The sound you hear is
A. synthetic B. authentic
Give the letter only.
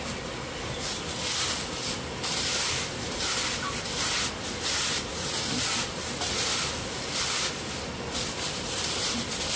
A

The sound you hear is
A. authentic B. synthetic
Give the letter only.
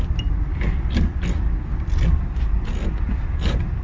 A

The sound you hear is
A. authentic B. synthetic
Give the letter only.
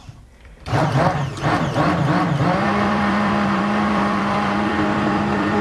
B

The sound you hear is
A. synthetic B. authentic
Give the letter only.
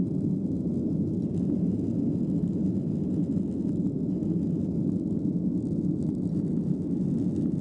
B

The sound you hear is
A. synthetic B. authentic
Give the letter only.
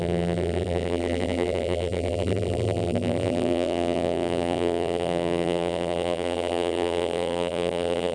A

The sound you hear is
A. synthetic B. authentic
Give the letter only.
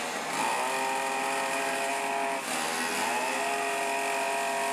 B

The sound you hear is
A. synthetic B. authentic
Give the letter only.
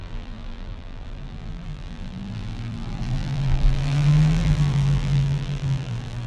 A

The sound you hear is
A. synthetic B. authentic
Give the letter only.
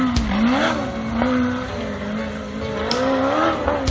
B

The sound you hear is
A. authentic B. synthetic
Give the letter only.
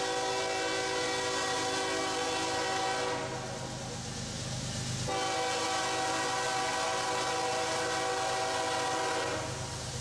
A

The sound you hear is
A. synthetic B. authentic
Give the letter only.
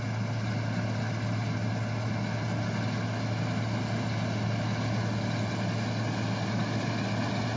B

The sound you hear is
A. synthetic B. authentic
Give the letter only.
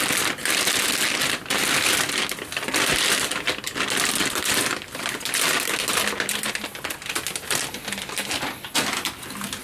B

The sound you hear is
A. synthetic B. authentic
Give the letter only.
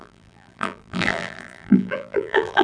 A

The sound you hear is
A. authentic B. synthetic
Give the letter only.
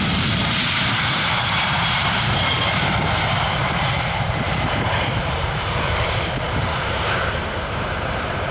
B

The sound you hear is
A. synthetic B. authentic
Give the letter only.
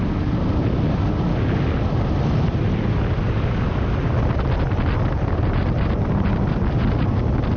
B